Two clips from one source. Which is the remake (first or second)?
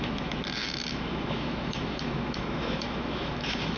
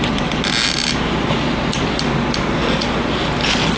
first